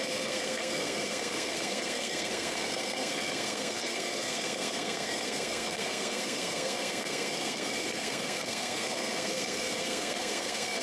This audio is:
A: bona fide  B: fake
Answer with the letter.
B